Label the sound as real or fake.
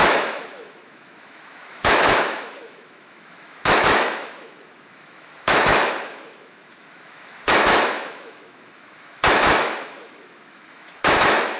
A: fake